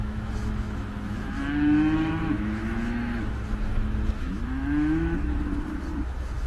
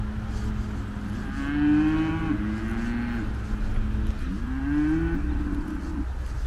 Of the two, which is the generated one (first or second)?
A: first